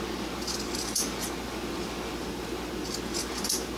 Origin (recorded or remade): recorded